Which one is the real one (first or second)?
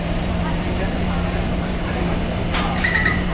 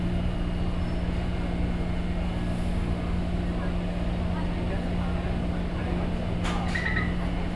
second